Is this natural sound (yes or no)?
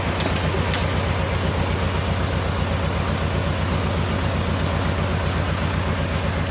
yes